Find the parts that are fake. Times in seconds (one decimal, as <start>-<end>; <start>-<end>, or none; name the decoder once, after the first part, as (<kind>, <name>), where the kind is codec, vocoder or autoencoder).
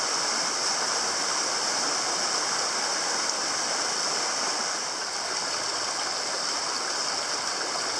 0.0-3.4 (vocoder, BigVGAN v2)